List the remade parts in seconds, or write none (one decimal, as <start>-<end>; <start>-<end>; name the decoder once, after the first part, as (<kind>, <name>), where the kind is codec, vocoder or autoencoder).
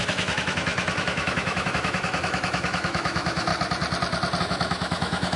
0.0-3.5 (autoencoder, DAC-VAE); 4.4-5.4